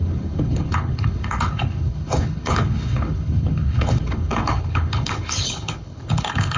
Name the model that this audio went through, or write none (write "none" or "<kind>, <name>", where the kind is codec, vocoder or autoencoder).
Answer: codec, HILCodec